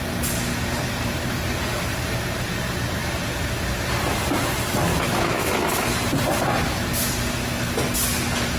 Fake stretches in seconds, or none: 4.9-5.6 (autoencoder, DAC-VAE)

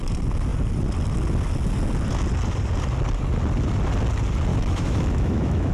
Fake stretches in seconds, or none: 4.5-5.7 (autoencoder, DAC-VAE)

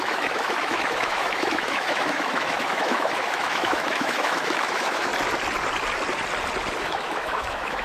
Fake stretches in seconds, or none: 0.0-5.1 (autoencoder, DAC-VAE); 6.8-7.8

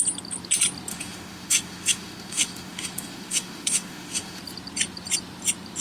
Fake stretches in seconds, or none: 0.9-4.4 (autoencoder, DAC-VAE)